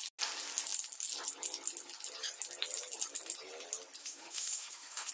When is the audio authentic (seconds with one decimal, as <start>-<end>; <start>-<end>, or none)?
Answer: 0.0-4.0